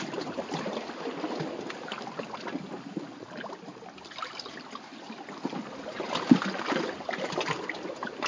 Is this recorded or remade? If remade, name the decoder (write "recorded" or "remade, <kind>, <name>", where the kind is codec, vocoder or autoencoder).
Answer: recorded